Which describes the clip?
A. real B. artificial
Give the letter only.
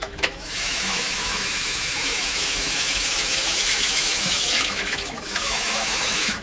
B